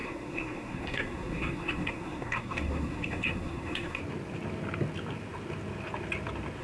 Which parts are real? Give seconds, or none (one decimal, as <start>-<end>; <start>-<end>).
4.0-6.6

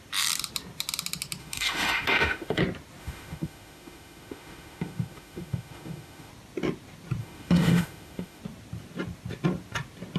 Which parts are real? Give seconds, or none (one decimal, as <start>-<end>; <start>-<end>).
0.0-1.4; 2.6-3.0; 6.3-7.2; 8.4-10.2

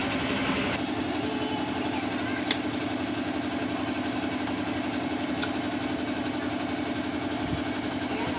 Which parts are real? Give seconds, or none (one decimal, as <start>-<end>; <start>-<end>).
0.0-8.4

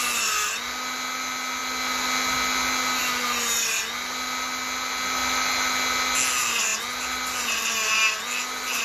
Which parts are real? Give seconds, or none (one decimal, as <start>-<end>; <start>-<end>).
0.0-8.8

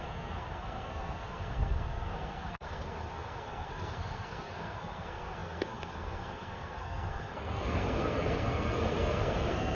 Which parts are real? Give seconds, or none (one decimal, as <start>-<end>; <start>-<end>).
none

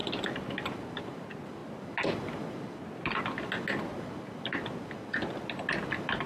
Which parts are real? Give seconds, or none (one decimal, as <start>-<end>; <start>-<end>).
0.0-6.3

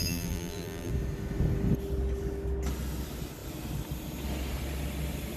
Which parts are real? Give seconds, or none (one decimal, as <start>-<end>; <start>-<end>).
0.9-5.4